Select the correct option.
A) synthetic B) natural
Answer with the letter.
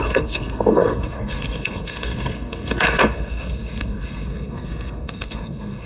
A